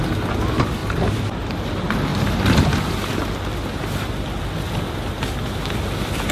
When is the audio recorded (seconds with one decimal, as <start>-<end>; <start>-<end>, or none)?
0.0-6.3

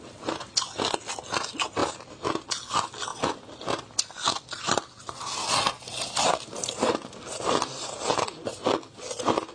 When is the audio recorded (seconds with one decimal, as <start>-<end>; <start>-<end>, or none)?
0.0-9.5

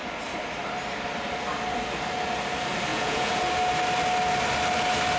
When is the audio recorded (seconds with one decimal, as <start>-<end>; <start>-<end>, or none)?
0.0-2.9; 3.4-5.2

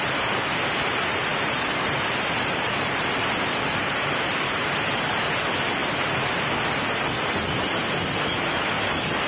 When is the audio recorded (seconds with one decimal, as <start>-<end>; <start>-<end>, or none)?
0.0-1.3; 5.1-9.3

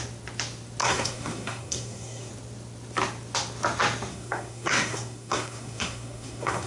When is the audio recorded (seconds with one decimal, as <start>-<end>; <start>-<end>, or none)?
0.0-0.8; 2.3-4.1

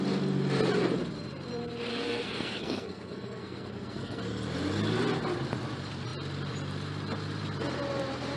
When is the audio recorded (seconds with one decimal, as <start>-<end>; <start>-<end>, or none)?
0.0-1.9; 4.2-8.4

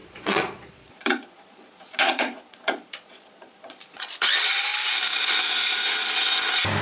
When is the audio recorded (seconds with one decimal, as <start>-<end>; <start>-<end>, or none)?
4.7-6.8

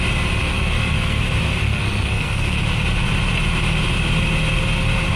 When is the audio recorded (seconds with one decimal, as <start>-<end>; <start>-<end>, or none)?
0.0-0.4; 1.2-1.6; 2.6-5.2